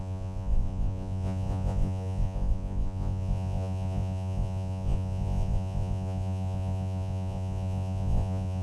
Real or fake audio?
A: fake